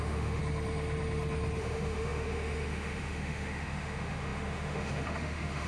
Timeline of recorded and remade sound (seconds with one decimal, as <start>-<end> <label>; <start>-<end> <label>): 0.0-0.4 remade; 0.4-1.6 recorded; 1.6-5.7 remade